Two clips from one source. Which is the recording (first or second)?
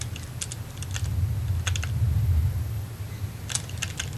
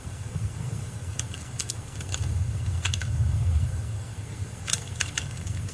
first